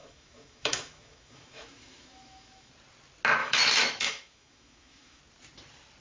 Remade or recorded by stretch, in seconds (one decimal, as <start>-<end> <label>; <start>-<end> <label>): 0.0-2.7 remade; 2.7-3.4 recorded; 3.4-5.2 remade; 5.2-6.0 recorded